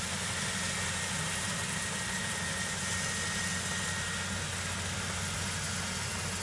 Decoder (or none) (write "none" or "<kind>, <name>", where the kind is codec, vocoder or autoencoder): none